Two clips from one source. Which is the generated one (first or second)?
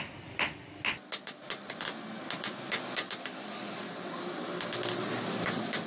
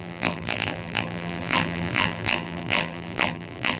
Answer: second